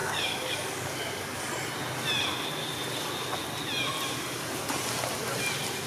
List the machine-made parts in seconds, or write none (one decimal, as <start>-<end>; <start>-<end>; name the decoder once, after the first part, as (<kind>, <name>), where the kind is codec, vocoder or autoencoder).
0.0-1.4 (codec, DAC)